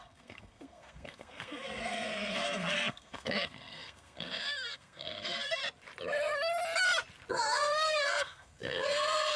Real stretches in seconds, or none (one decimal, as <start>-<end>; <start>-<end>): 5.6-7.3